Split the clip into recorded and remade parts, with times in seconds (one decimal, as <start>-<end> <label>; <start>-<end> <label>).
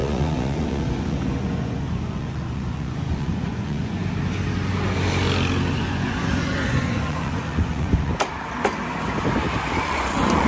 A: 0.0-4.0 remade; 4.0-5.7 recorded; 5.7-8.1 remade; 8.1-9.8 recorded; 9.8-10.5 remade